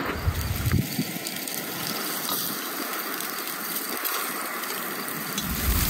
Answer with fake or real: real